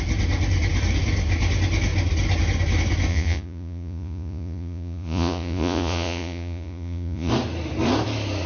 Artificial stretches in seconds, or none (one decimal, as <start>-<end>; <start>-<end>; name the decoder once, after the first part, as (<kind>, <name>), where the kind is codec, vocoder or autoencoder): 3.1-7.3 (vocoder, Vocos)